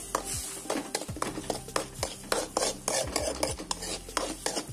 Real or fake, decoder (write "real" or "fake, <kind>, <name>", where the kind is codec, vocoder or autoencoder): real